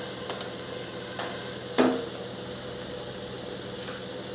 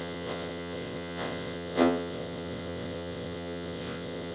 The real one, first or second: first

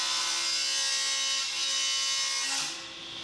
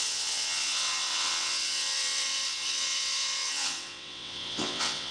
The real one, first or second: first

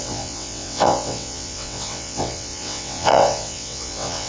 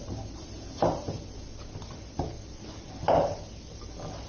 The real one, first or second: second